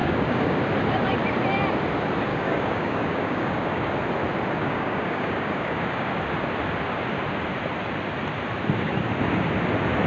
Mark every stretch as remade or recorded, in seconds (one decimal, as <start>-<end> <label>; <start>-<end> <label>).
0.0-0.6 remade; 0.6-2.3 recorded; 2.3-3.9 remade; 3.9-4.6 recorded; 4.6-6.1 remade; 6.1-10.1 recorded